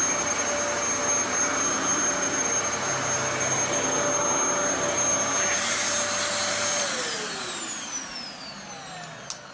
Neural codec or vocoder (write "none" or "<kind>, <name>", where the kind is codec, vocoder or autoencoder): none